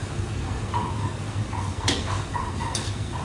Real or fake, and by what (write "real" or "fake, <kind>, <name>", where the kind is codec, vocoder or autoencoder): fake, codec, SNAC